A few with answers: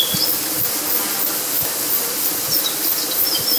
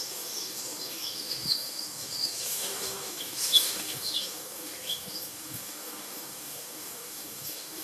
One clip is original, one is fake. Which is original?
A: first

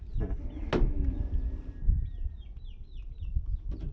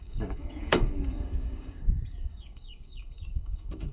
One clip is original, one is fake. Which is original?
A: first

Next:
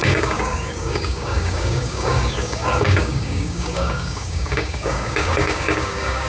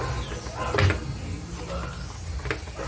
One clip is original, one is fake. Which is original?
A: second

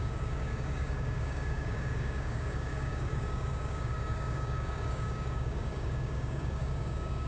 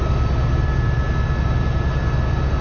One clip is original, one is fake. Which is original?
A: second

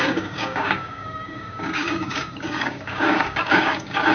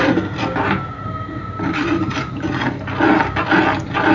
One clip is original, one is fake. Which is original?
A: second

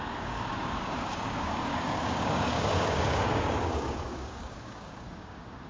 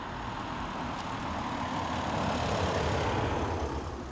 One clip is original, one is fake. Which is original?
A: second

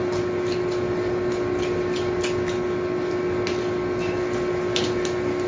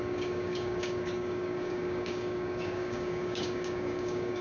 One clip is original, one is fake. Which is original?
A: first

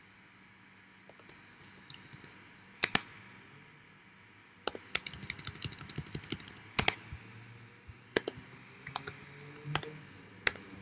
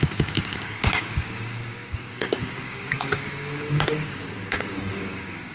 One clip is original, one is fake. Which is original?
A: first